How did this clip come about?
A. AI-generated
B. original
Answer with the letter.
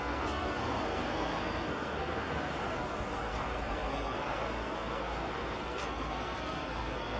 A